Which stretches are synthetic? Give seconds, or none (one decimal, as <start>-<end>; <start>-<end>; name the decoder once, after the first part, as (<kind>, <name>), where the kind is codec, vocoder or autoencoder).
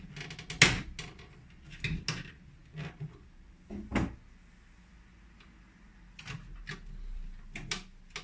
none